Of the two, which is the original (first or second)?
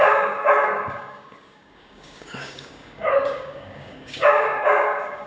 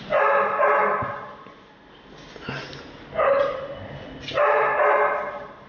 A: second